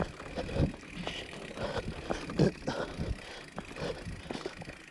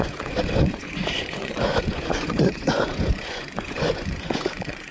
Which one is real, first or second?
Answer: first